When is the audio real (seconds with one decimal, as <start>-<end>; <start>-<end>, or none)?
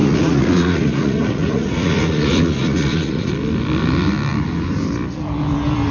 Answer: 3.3-5.9